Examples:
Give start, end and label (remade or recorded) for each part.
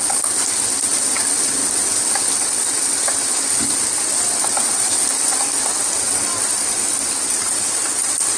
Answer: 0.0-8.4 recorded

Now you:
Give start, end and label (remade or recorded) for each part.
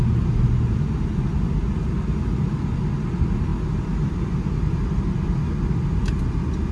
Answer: 0.0-6.7 recorded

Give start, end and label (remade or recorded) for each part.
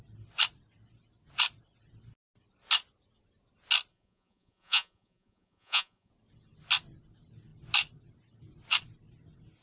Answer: 0.0-3.9 recorded; 3.9-6.1 remade; 6.1-9.6 recorded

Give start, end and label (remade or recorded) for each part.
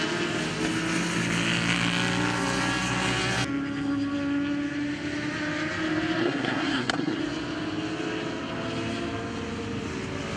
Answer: 0.0-6.2 recorded; 6.2-7.2 remade; 7.2-10.4 recorded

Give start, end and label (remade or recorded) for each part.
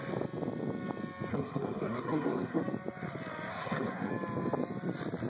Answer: 0.0-1.3 recorded; 1.3-2.6 remade; 2.6-3.5 recorded; 3.5-4.1 remade; 4.1-5.3 recorded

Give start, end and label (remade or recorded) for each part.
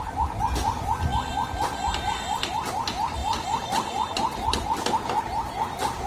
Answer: 0.0-6.1 recorded